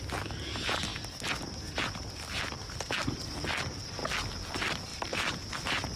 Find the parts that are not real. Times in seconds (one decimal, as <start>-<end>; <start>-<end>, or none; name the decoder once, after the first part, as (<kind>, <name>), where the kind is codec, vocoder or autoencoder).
4.9-5.4 (vocoder, BigVGAN v2)